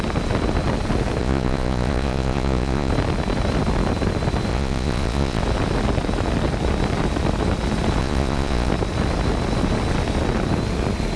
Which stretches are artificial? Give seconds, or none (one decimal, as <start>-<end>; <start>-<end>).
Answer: 1.2-2.9; 4.5-5.4; 8.0-8.7